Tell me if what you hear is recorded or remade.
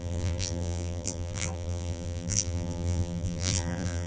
remade